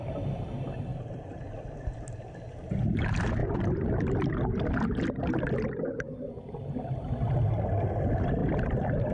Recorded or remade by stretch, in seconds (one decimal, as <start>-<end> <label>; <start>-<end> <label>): 0.0-0.9 recorded; 0.9-1.4 remade; 1.4-8.4 recorded; 8.4-9.1 remade